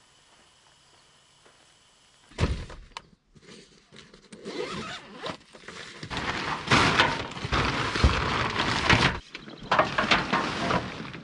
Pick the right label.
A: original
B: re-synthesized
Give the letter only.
A